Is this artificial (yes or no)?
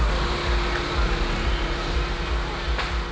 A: no